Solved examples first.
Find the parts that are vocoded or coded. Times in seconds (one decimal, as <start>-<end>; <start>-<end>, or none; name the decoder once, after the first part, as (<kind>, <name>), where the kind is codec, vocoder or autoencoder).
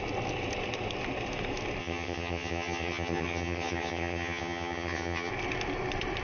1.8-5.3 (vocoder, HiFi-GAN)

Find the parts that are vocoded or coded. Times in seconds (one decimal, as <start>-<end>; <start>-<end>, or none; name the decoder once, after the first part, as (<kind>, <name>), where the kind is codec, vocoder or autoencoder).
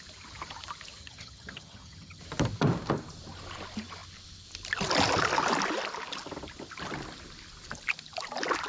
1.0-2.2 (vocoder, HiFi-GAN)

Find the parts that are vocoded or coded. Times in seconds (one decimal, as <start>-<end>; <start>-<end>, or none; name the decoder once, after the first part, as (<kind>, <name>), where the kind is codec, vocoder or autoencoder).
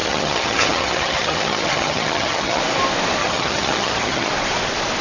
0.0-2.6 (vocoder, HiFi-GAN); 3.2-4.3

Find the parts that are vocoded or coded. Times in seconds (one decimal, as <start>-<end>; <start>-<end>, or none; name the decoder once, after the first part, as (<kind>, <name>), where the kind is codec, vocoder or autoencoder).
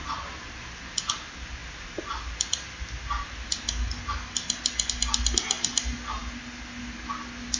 none